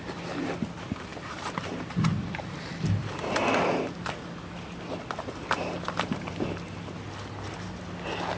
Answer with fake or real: real